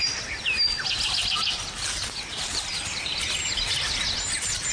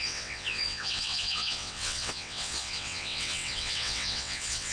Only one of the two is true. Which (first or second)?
first